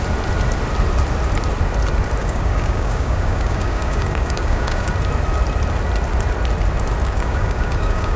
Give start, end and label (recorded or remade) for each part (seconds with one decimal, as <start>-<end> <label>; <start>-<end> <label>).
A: 0.0-2.2 recorded; 2.2-4.9 remade; 4.9-7.0 recorded; 7.0-8.2 remade